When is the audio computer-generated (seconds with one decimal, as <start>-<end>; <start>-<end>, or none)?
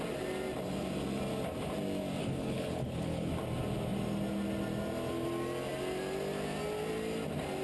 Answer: 2.2-3.3